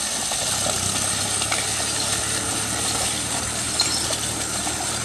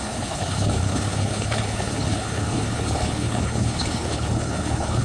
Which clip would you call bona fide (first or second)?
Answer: first